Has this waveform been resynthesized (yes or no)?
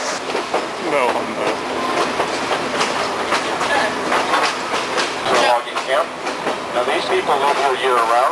no